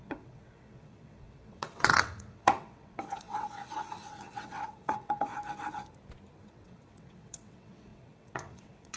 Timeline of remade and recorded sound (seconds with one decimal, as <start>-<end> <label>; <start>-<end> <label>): 0.0-5.3 remade; 5.3-6.4 recorded; 6.4-9.0 remade